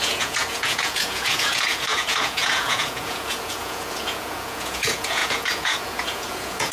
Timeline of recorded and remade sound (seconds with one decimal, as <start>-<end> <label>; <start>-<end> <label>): 0.0-6.7 remade